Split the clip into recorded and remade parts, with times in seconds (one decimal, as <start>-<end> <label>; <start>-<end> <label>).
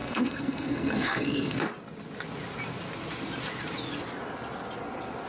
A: 0.0-1.6 remade; 1.6-5.3 recorded